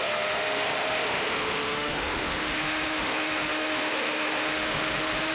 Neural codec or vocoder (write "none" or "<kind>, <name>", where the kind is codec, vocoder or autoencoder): autoencoder, DAC-VAE